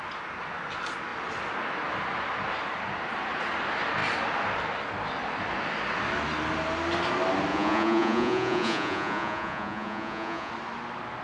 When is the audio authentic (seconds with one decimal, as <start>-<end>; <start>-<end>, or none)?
0.0-7.5; 10.5-11.2